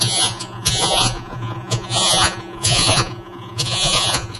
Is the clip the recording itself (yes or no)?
no